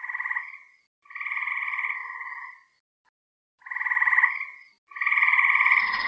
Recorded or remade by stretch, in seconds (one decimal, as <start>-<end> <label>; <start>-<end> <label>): 0.0-0.9 recorded; 0.9-1.5 remade; 1.5-2.0 recorded; 2.0-6.1 remade